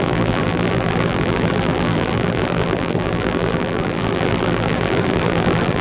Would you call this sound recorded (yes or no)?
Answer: no